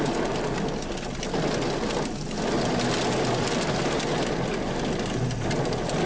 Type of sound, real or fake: real